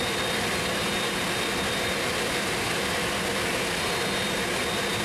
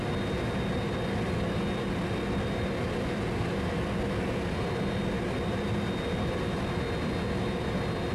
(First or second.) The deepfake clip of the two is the first